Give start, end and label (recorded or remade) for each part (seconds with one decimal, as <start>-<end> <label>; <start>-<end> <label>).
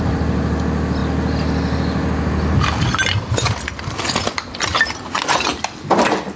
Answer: 0.0-6.4 recorded